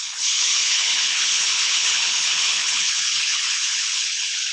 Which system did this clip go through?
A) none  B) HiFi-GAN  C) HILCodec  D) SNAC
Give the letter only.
C